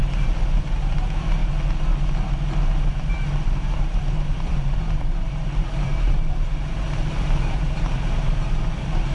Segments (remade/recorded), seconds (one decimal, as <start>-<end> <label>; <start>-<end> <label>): 0.0-0.6 recorded; 0.6-1.4 remade; 1.4-2.9 recorded; 2.9-9.1 remade